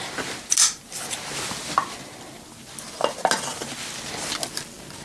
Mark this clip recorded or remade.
recorded